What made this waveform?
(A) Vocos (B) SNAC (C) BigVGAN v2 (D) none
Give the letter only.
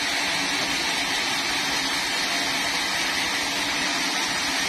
D